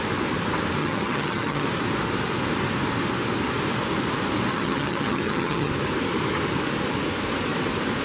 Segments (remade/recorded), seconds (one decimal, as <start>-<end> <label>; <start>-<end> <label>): 0.0-0.8 recorded; 0.8-1.7 remade; 1.7-4.5 recorded; 4.5-5.7 remade; 5.7-8.0 recorded